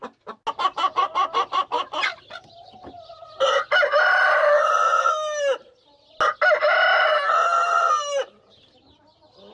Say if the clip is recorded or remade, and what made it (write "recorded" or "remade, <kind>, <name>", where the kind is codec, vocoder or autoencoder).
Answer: recorded